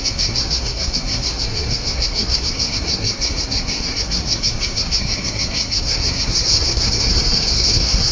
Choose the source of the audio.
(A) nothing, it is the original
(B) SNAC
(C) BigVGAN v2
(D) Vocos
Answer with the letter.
B